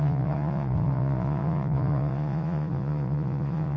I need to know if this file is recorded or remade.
remade